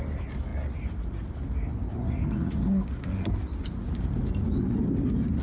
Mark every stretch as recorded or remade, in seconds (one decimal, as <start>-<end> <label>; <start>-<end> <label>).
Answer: 0.0-5.4 recorded